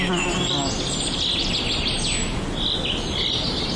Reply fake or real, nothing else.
real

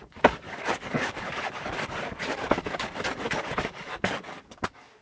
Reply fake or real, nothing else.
fake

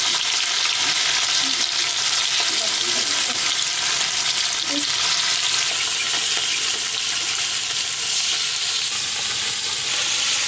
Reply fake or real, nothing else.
real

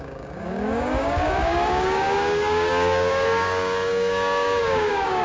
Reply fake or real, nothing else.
fake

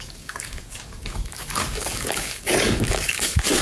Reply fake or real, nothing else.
fake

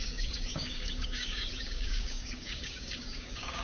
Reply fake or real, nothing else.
fake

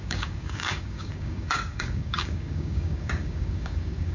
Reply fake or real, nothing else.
fake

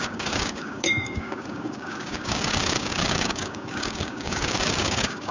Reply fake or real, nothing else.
fake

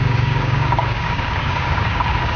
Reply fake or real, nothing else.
fake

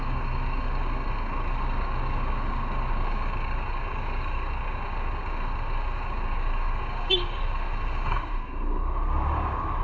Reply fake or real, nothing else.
fake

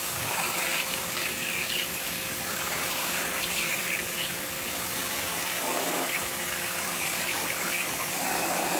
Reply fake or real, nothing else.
fake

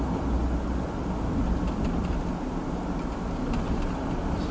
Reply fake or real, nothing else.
real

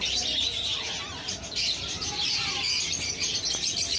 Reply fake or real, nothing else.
real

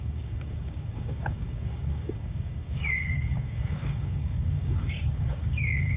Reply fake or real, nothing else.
fake